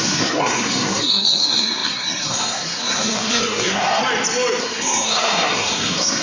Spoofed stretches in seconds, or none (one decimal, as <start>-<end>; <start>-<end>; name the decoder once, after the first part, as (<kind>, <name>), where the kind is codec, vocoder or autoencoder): 0.0-4.0 (codec, SNAC); 4.6-6.2